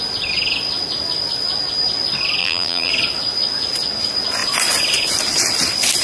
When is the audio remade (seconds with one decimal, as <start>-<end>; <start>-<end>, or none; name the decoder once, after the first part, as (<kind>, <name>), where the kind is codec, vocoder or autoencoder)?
2.4-2.9 (vocoder, BigVGAN v2)